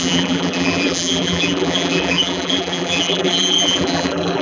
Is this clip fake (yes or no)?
yes